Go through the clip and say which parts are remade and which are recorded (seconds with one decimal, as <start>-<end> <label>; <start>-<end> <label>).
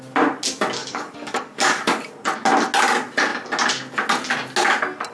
0.0-0.8 recorded; 0.8-1.8 remade; 1.8-5.1 recorded